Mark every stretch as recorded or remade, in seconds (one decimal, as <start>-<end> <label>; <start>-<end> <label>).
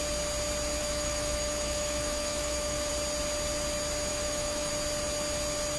0.0-0.8 recorded; 0.8-2.9 remade; 2.9-4.1 recorded; 4.1-4.7 remade; 4.7-5.8 recorded